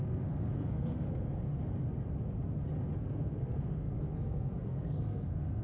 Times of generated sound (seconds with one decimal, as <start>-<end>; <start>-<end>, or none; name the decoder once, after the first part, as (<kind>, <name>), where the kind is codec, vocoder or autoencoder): 0.0-1.5 (codec, SNAC); 3.1-5.6